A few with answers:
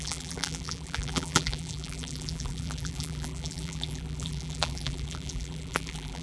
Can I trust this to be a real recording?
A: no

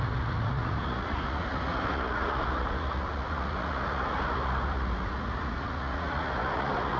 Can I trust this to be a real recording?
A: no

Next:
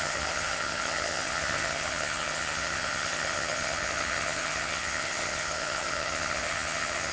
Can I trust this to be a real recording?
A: no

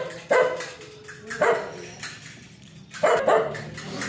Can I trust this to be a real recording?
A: yes